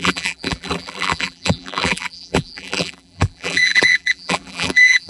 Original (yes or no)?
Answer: no